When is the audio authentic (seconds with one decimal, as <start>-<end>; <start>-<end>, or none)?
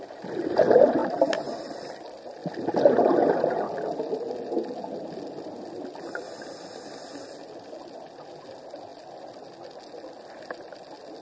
0.0-11.2